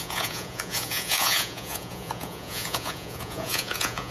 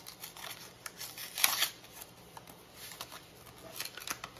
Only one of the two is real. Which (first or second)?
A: second